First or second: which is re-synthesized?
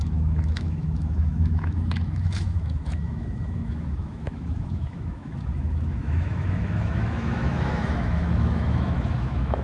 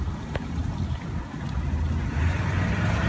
first